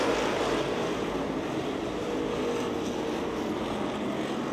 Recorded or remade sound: recorded